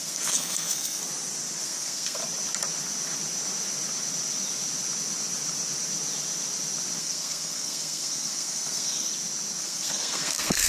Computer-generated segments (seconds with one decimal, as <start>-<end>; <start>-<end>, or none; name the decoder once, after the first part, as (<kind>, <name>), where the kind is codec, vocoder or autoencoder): 0.0-1.0 (codec, SNAC); 1.6-2.2; 7.0-9.1; 9.6-10.7